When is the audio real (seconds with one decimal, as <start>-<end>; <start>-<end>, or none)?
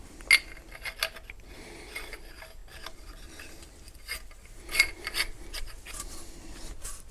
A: 0.0-7.1